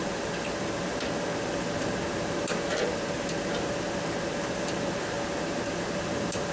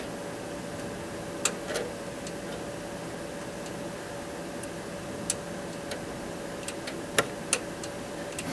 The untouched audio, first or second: second